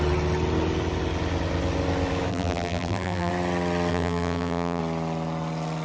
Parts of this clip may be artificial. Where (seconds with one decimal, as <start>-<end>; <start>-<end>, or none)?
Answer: 2.3-3.3; 3.9-4.8

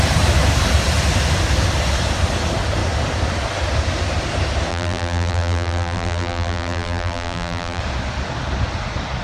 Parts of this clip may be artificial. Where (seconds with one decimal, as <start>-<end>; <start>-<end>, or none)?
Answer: 4.7-7.8

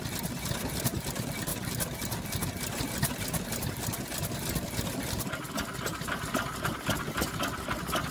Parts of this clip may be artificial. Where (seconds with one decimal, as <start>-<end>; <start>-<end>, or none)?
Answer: none

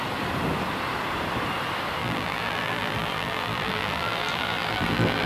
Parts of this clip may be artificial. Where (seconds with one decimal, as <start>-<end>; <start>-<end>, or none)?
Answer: 2.0-5.3

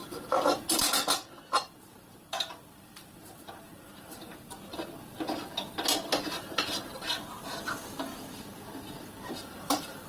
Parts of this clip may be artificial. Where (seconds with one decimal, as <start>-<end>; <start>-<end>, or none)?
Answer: 1.5-4.3; 9.6-10.1

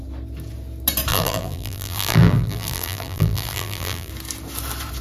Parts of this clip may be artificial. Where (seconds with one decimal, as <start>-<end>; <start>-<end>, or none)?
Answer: 1.1-4.1

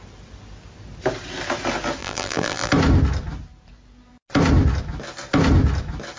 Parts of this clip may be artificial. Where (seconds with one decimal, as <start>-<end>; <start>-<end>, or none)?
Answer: 2.0-2.7